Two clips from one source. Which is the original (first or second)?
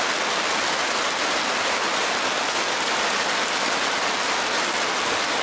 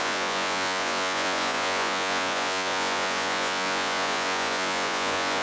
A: first